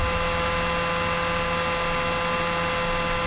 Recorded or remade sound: recorded